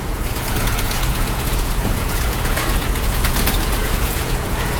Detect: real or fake fake